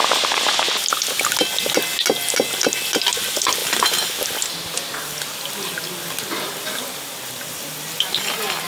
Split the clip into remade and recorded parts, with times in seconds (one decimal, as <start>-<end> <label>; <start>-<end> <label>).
0.0-8.7 recorded